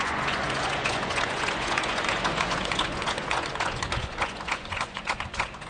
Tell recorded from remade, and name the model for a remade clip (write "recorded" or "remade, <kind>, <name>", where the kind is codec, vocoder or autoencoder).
remade, vocoder, Vocos